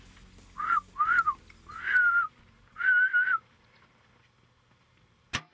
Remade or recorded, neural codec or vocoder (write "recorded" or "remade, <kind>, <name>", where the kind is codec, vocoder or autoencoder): recorded